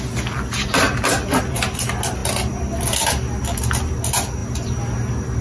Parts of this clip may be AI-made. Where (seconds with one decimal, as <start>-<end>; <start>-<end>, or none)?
none